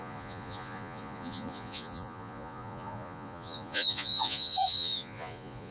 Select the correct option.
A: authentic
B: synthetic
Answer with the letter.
B